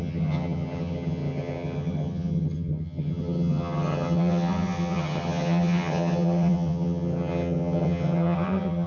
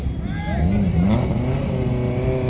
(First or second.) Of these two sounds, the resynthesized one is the first